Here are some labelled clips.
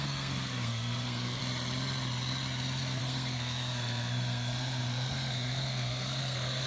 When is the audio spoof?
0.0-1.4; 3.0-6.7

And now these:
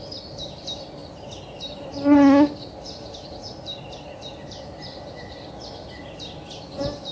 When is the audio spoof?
none